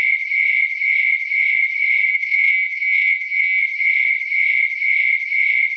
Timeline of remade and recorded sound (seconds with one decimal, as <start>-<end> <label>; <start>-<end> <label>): 0.0-2.1 recorded; 2.1-3.6 remade; 3.6-5.8 recorded